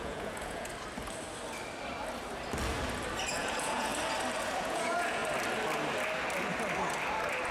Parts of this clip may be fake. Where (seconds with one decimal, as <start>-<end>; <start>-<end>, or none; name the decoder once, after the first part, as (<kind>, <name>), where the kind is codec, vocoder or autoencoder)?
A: 0.0-0.7 (vocoder, Vocos); 3.3-3.9; 4.6-5.2

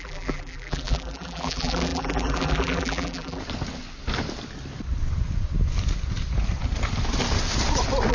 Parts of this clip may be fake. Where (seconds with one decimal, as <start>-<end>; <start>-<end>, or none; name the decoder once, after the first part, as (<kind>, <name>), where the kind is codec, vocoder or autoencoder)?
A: 0.0-3.4 (vocoder, BigVGAN v2)